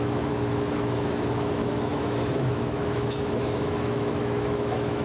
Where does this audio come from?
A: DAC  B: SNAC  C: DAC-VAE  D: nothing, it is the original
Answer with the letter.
C